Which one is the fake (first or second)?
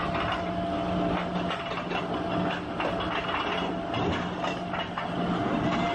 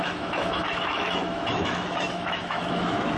second